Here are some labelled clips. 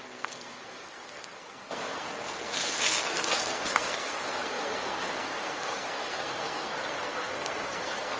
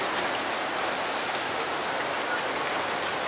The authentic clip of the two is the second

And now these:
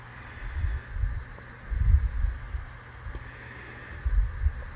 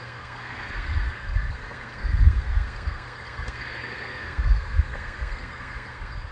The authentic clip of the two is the first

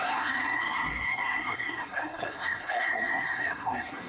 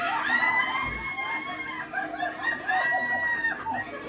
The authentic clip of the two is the second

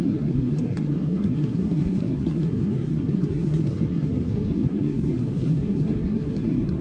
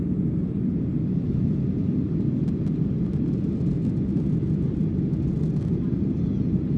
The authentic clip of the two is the second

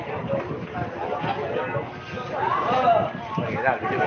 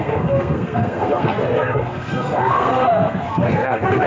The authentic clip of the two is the first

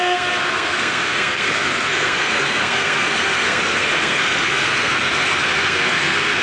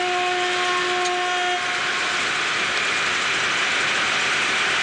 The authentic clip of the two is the second